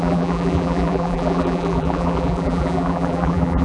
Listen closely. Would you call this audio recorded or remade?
remade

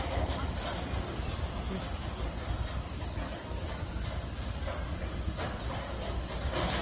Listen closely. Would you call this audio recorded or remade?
recorded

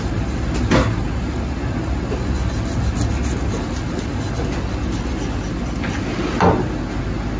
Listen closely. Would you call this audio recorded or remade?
recorded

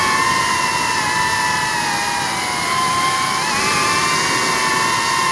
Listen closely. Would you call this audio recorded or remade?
recorded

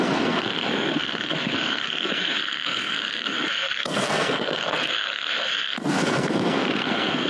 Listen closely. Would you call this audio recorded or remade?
remade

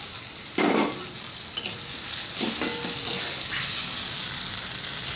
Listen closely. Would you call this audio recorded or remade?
recorded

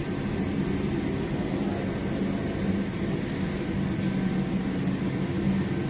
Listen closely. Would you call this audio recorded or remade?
recorded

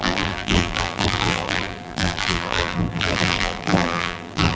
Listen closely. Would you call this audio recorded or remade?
remade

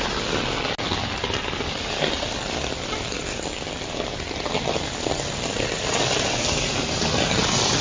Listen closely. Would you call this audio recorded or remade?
recorded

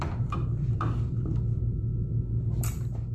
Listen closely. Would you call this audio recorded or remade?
remade